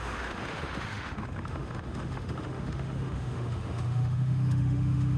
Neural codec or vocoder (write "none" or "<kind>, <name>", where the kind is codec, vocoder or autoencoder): autoencoder, DAC-VAE